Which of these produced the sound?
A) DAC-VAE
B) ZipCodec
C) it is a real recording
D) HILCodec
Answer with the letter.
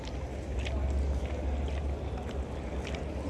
C